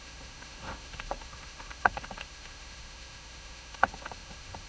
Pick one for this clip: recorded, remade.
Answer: remade